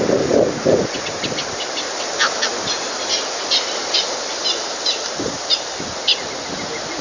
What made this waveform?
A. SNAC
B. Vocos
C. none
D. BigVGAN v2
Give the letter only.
C